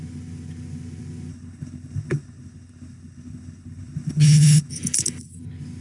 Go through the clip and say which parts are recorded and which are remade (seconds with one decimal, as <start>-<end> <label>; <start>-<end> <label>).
0.0-1.3 recorded; 1.3-4.7 remade; 4.7-5.8 recorded